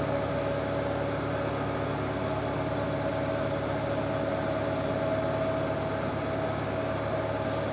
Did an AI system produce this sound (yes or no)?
no